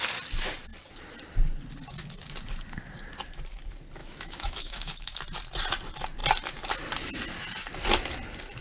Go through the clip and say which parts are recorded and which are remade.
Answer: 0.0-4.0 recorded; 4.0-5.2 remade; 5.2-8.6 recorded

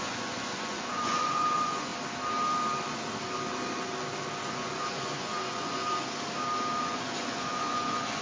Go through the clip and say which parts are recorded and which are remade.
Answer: 0.0-1.9 remade; 1.9-4.5 recorded; 4.5-5.8 remade; 5.8-6.8 recorded; 6.8-8.2 remade

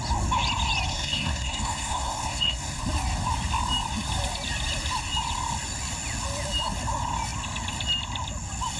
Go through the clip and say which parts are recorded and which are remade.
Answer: 0.0-0.9 recorded; 0.9-2.8 remade; 2.8-8.8 recorded

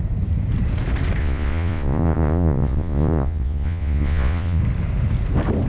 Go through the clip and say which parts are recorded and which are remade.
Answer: 0.0-1.2 recorded; 1.2-4.6 remade; 4.6-5.7 recorded

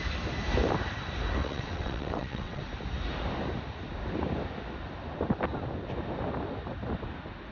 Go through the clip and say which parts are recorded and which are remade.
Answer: 0.0-1.4 recorded; 1.4-2.6 remade; 2.6-7.5 recorded

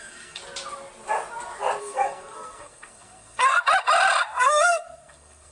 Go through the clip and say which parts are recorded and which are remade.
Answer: 0.0-0.4 remade; 0.4-1.8 recorded; 1.8-3.5 remade; 3.5-4.4 recorded; 4.4-5.5 remade